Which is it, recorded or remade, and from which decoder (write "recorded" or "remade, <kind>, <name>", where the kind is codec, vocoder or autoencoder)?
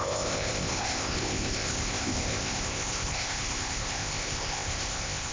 remade, codec, ZipCodec